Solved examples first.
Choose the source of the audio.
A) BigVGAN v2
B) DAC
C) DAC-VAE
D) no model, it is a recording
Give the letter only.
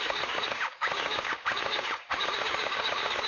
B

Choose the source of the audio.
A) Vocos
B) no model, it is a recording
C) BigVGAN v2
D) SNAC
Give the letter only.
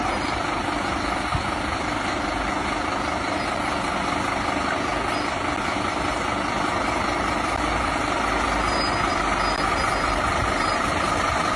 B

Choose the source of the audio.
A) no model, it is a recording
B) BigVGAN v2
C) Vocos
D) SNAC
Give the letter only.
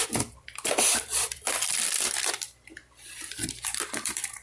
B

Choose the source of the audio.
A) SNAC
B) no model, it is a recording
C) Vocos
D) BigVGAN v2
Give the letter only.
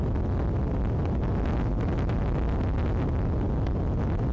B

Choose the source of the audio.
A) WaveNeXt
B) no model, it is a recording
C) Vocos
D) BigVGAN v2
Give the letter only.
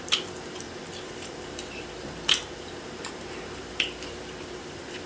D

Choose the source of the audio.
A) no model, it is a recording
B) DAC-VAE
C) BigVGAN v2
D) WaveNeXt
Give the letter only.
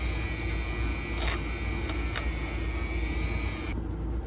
A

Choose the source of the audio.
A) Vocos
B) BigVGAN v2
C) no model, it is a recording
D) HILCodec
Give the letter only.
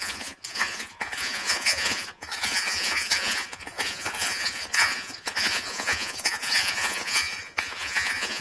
A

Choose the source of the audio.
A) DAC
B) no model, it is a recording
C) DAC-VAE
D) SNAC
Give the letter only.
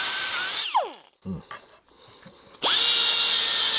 B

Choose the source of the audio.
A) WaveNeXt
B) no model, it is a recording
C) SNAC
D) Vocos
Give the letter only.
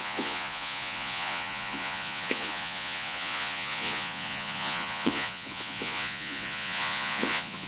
D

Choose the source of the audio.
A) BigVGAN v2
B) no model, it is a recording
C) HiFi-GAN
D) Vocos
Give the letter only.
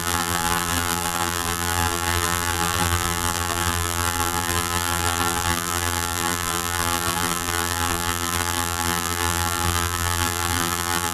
A